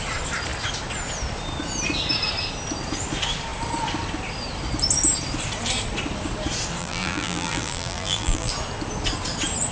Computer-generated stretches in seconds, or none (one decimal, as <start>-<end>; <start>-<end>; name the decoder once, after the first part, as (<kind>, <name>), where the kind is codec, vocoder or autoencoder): 6.8-8.5 (vocoder, BigVGAN v2)